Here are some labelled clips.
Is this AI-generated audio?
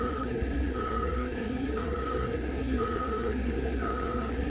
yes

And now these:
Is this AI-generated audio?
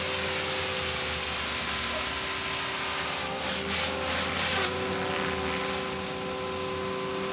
no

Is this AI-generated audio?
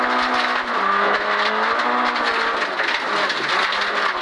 no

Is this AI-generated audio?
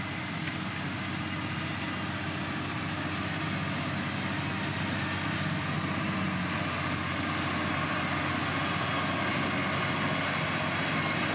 no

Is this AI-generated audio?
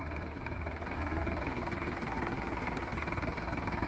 yes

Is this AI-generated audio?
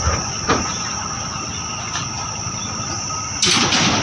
no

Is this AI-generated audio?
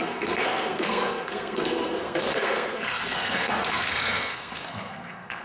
yes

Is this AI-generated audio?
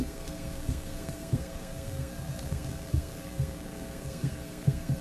yes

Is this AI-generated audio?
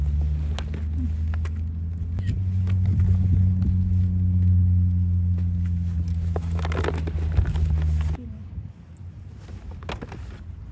no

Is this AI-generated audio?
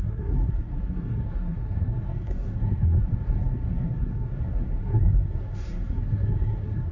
yes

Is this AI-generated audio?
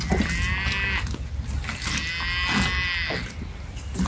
no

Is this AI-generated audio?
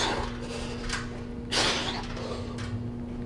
no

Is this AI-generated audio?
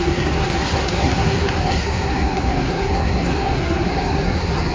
yes